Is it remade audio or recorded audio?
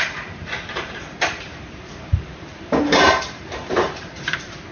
remade